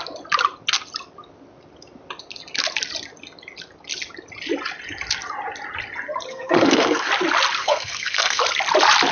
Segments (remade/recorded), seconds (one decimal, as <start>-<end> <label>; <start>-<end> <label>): 0.0-6.3 recorded; 6.3-7.1 remade; 7.1-7.6 recorded; 7.6-8.4 remade; 8.4-9.1 recorded